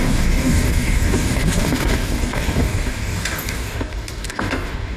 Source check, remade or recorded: remade